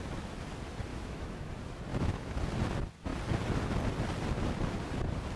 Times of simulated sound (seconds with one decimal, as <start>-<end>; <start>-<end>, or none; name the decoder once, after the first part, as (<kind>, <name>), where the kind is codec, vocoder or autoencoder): 0.9-1.5 (autoencoder, DAC-VAE); 1.9-2.4